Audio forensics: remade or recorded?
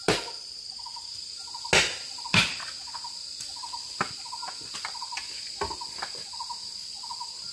recorded